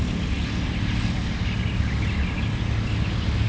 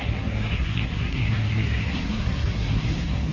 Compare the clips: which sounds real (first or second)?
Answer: first